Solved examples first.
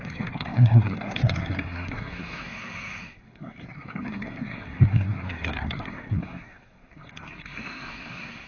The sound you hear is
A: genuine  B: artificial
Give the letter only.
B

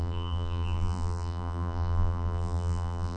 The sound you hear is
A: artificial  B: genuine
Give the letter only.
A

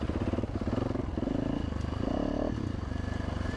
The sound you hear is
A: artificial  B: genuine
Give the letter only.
B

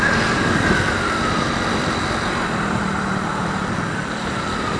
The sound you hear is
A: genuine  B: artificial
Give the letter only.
B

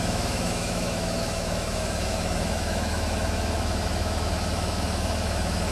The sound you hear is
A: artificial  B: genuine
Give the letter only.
A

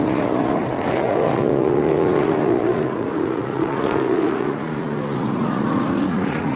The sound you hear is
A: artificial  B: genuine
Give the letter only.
A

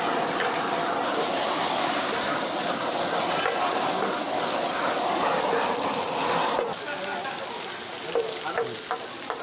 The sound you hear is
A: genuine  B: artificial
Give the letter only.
A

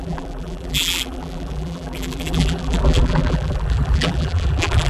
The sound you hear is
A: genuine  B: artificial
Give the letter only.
B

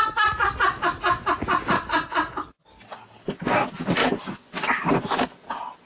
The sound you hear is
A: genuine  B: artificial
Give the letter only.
A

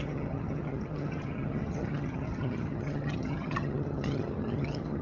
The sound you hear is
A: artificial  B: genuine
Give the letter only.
A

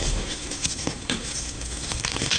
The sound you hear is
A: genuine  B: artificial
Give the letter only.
B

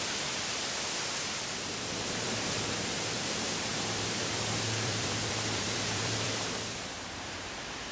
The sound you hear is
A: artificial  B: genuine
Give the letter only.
A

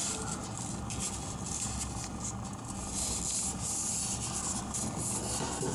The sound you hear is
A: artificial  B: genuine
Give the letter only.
B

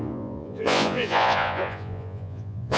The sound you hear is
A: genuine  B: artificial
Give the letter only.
B